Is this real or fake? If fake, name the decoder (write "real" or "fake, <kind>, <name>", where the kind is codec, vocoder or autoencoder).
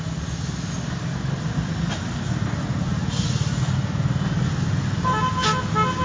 real